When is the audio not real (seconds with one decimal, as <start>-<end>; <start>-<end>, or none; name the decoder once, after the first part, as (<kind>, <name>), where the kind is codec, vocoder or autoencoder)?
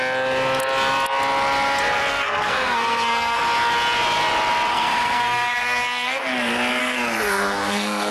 2.1-3.4 (codec, SNAC); 4.7-6.2; 6.8-8.1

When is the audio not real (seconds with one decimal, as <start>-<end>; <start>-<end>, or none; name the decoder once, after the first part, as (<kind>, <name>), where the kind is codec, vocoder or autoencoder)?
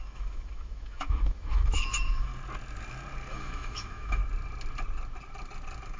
0.0-2.3 (autoencoder, DAC-VAE); 3.3-4.2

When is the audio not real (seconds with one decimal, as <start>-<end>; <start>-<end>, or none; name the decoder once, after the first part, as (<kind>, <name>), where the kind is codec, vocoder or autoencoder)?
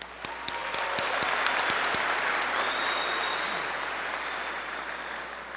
none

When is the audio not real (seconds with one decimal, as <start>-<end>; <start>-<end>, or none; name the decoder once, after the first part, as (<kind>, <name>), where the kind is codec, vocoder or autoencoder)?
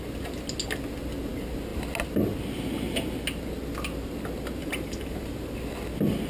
4.6-5.5 (vocoder, BigVGAN v2)